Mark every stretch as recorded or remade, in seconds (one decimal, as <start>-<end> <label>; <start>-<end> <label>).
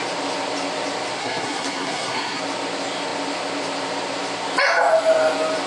0.0-1.2 recorded; 1.2-2.4 remade; 2.4-5.7 recorded